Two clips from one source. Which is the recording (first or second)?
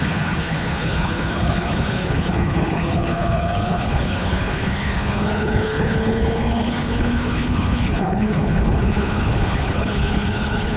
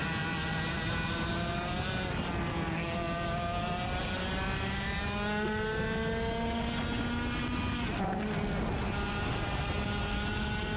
second